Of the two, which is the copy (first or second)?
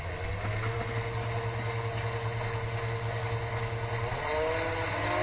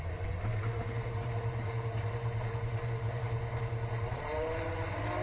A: second